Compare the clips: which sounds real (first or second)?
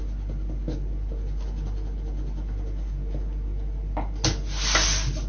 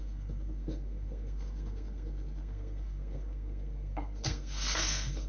first